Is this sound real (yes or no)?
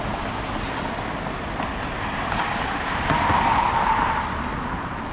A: yes